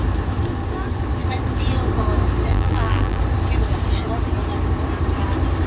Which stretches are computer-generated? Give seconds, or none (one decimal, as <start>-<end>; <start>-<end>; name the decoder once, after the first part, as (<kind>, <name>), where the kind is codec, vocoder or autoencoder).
2.5-3.2 (vocoder, BigVGAN v2)